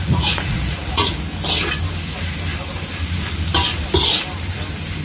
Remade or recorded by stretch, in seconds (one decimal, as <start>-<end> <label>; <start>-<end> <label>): 0.0-1.1 remade; 1.1-5.0 recorded